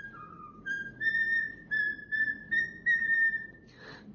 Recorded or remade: recorded